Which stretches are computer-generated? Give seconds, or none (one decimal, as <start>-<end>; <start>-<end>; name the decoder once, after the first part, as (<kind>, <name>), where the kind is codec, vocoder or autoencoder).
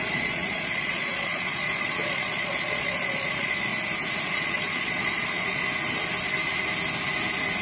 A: 0.0-3.7 (vocoder, Vocos); 4.3-5.6